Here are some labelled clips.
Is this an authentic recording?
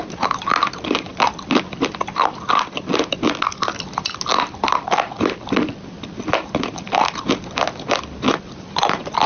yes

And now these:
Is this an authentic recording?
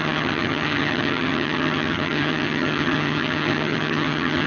no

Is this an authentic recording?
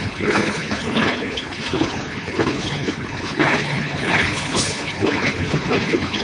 no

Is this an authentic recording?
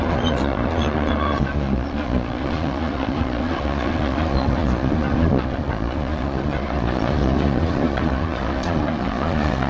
no